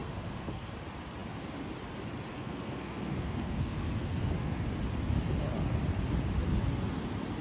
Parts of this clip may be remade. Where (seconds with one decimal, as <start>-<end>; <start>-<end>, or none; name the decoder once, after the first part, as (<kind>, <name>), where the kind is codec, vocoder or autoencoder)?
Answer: 0.0-0.7 (codec, SNAC); 2.3-4.7